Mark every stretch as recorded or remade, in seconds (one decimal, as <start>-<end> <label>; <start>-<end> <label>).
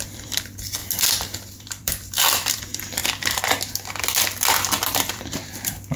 0.0-0.8 remade; 0.8-1.5 recorded; 1.5-3.0 remade; 3.0-5.1 recorded; 5.1-6.0 remade